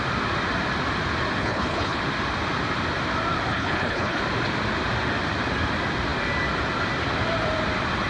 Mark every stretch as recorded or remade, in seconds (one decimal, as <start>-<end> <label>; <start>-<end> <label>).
0.0-1.4 recorded; 1.4-2.0 remade; 2.0-3.5 recorded; 3.5-4.2 remade; 4.2-8.1 recorded